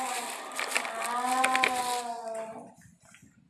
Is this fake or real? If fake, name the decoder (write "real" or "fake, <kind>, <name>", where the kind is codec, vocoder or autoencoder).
real